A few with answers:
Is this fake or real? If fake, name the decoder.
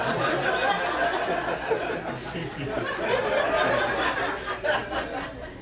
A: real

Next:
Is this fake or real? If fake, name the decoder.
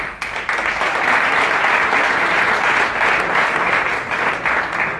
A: real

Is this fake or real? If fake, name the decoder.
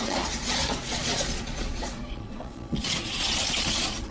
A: fake, vocoder, Vocos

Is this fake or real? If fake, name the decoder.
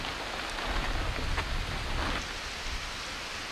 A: real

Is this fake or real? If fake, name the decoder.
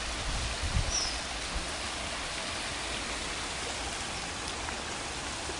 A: real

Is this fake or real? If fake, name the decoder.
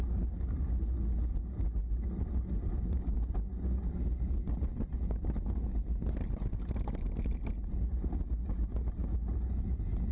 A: real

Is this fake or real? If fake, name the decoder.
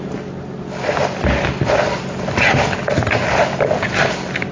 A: real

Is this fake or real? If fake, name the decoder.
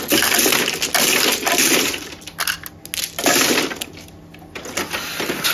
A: real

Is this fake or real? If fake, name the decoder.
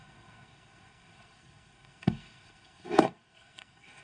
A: fake, codec, SNAC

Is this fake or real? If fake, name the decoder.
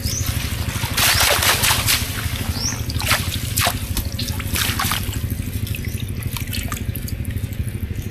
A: real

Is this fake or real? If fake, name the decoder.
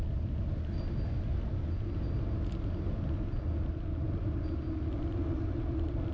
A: real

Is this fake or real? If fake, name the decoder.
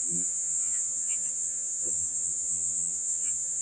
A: fake, vocoder, HiFi-GAN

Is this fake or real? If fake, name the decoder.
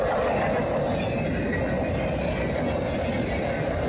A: real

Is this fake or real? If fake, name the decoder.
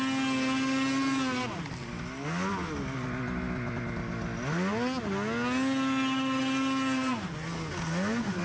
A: real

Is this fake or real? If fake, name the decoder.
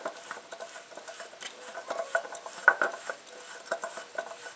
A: real